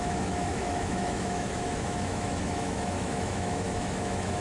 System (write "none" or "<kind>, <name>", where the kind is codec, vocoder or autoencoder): autoencoder, DAC-VAE